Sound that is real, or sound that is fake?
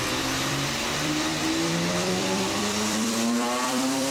fake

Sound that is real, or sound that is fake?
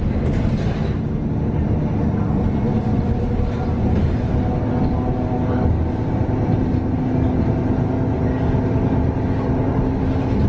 real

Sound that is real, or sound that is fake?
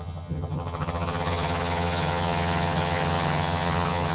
fake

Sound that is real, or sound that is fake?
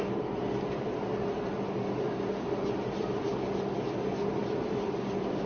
real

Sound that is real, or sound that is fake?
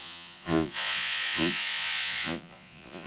fake